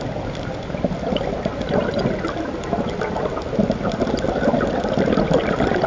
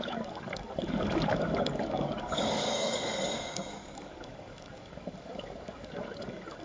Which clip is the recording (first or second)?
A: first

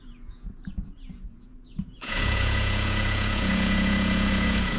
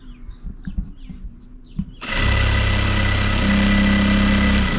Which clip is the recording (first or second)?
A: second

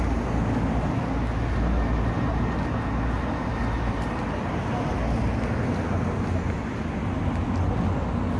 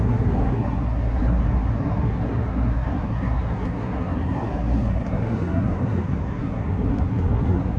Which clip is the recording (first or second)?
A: first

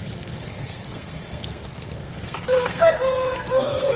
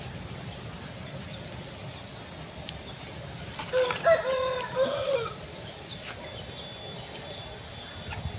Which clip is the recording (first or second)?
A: second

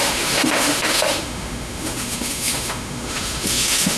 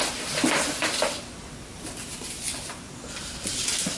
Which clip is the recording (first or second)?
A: second